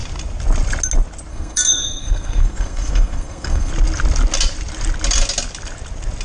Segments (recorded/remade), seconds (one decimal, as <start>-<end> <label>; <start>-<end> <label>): 0.0-1.3 recorded; 1.3-3.7 remade; 3.7-6.2 recorded